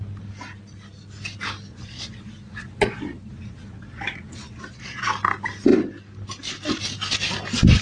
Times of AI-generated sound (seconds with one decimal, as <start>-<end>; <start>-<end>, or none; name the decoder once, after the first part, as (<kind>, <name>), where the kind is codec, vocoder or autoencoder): 1.7-5.1 (vocoder, Vocos)

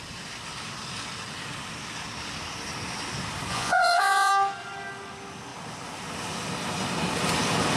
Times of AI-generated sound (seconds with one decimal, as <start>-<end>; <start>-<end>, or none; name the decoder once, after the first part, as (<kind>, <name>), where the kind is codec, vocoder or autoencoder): 3.5-4.3 (vocoder, Vocos)

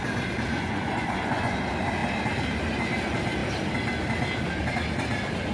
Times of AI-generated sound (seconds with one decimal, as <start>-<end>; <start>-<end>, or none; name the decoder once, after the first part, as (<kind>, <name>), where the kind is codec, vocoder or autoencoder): 0.5-1.6 (vocoder, Vocos)

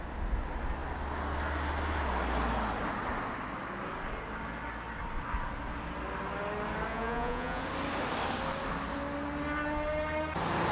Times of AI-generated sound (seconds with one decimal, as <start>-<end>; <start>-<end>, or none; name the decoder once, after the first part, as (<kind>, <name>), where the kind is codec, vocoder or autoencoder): 6.9-7.6 (vocoder, Vocos)

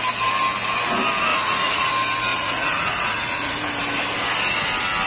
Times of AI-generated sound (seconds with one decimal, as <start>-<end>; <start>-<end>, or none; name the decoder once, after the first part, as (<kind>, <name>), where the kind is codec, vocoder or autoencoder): 1.3-1.9 (vocoder, Vocos); 2.3-3.7